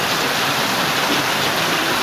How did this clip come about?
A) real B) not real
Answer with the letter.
B